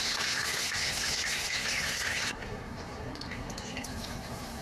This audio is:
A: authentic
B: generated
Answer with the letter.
B